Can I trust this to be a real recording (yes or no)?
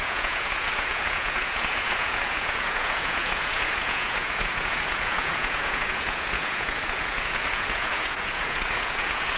no